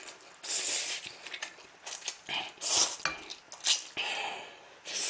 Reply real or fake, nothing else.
real